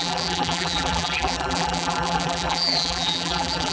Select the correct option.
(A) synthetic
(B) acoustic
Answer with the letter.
A